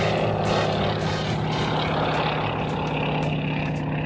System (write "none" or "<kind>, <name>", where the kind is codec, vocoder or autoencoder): none